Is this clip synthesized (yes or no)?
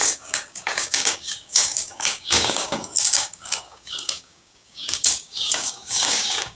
yes